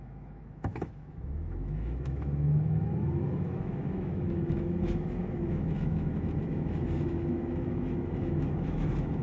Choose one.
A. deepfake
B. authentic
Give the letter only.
A